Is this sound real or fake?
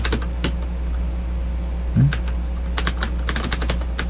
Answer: real